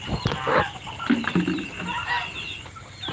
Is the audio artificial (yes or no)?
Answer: no